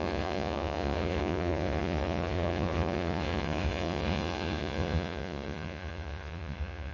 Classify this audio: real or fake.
fake